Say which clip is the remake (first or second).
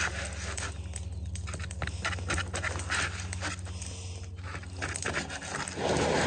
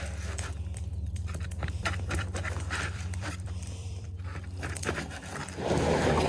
second